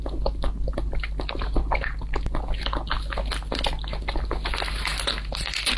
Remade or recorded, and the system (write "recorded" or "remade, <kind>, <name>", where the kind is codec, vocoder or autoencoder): recorded